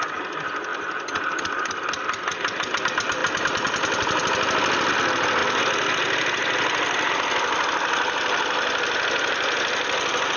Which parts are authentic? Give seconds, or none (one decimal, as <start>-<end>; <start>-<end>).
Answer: 0.0-10.4